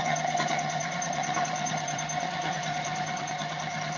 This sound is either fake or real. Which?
fake